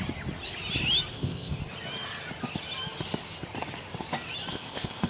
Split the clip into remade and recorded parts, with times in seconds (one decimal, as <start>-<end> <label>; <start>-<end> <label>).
0.0-1.1 recorded; 1.1-1.6 remade; 1.6-4.5 recorded; 4.5-5.1 remade